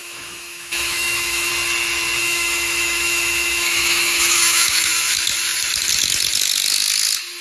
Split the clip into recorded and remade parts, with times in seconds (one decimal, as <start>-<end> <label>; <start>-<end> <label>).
0.0-1.5 remade; 1.5-2.2 recorded; 2.2-4.9 remade; 4.9-7.4 recorded